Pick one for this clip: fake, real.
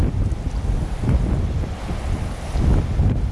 real